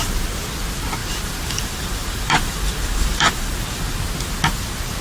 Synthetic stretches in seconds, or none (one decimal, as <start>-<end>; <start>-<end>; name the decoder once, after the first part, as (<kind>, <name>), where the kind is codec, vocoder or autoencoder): 1.0-4.0 (vocoder, BigVGAN v2)